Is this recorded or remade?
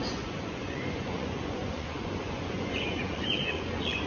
remade